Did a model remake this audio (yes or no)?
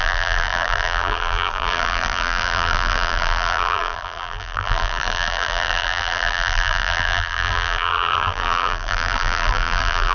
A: yes